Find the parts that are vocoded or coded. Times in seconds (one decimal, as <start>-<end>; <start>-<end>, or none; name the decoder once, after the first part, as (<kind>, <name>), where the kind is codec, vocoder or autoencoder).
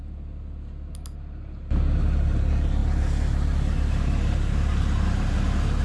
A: none